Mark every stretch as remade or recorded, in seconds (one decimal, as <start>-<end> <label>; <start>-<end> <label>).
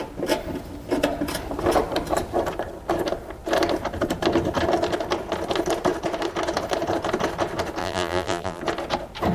0.0-7.8 recorded; 7.8-8.6 remade; 8.6-9.3 recorded